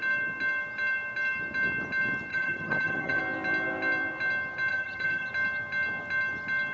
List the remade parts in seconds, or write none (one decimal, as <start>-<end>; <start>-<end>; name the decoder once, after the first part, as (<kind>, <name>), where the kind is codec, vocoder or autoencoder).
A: 2.3-3.2 (vocoder, HiFi-GAN); 4.7-5.3